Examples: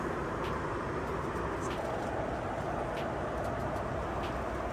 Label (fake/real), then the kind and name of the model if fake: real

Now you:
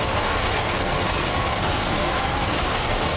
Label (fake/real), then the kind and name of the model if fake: fake, codec, SNAC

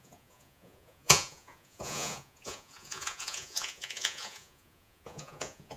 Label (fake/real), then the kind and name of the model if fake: fake, vocoder, Vocos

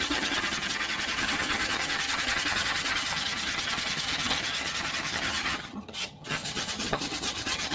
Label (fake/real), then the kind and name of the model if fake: fake, vocoder, HiFi-GAN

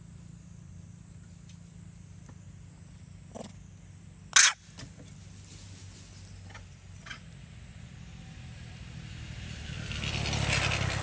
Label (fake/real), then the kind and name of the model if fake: real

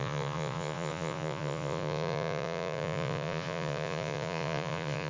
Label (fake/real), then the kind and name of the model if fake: fake, vocoder, Vocos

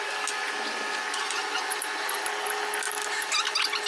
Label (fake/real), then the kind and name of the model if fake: real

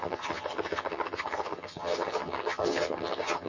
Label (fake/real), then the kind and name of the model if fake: fake, vocoder, HiFi-GAN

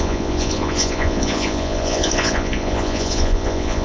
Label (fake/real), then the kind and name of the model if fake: fake, vocoder, Vocos